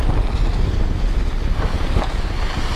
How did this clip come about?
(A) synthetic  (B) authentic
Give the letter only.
B